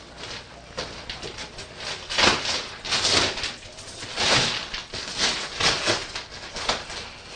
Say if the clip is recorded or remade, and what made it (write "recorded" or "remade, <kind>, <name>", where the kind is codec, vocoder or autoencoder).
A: recorded